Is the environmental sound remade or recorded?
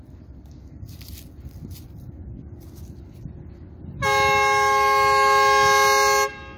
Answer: recorded